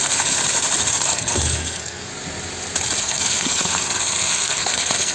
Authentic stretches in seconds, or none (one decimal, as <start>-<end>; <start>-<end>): 0.4-0.9; 2.1-3.0